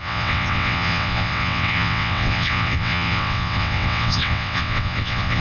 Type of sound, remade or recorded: remade